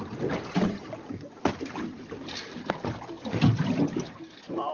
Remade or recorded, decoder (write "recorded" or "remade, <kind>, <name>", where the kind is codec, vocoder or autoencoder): recorded